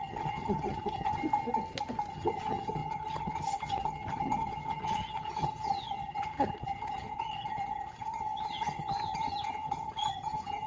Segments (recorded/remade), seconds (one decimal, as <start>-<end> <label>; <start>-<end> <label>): 0.0-1.2 remade; 1.2-2.1 recorded; 2.1-10.7 remade